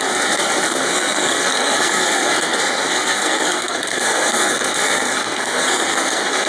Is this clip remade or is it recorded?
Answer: remade